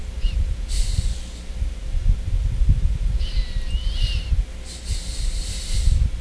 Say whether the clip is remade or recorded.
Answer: recorded